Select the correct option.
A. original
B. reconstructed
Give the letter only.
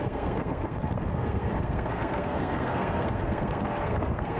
B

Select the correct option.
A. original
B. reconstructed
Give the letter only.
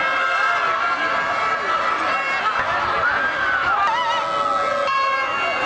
A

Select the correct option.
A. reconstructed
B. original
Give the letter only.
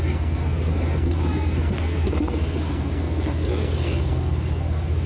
A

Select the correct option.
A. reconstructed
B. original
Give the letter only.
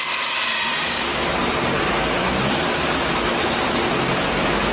B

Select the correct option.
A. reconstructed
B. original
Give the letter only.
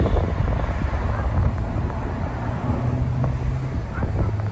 B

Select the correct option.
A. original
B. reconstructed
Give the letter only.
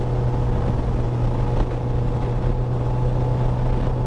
A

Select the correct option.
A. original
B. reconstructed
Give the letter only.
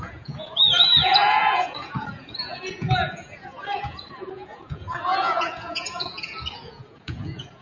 B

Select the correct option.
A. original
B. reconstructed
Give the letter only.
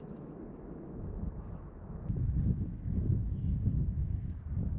B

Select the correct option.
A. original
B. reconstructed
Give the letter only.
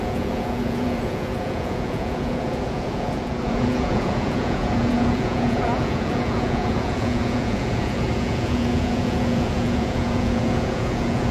B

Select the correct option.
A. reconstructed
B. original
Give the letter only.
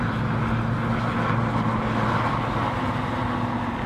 B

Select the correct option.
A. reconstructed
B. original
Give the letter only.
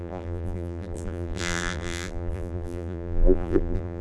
A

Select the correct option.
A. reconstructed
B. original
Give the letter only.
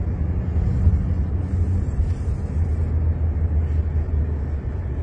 B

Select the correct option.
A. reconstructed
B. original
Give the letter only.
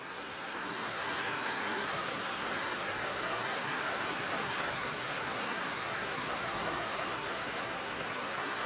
A